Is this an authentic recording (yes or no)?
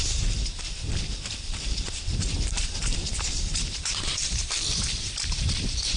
no